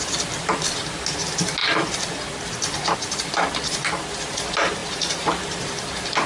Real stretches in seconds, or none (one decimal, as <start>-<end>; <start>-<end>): 0.0-4.8; 5.4-6.3